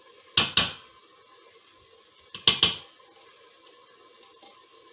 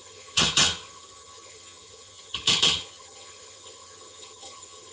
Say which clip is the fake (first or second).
second